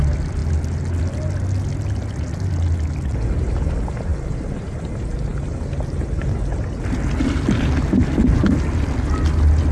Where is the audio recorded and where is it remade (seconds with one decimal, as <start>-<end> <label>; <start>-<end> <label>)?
0.0-9.7 recorded